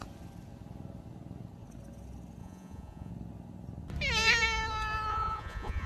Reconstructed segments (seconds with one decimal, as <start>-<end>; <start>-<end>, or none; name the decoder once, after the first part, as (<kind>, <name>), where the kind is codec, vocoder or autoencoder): 2.4-3.1 (vocoder, Vocos); 5.1-5.9